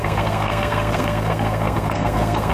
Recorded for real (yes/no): no